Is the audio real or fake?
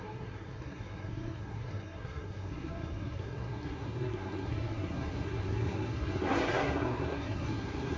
fake